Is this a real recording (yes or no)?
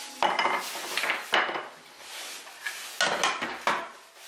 yes